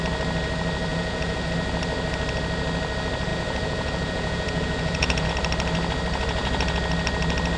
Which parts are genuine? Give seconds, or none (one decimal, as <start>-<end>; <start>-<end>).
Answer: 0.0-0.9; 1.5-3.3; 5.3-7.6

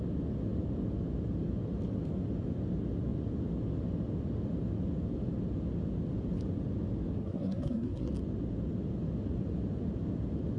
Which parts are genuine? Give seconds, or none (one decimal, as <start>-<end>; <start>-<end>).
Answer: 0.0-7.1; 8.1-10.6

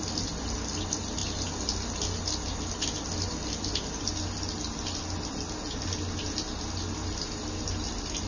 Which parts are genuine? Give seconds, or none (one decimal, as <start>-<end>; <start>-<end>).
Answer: 0.0-8.3

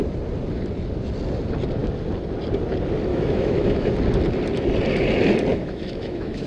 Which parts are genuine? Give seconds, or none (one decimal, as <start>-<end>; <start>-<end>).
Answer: 0.0-3.1; 3.9-5.5

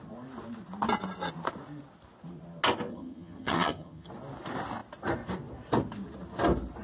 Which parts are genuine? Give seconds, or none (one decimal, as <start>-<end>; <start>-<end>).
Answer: 0.0-2.9; 4.1-6.8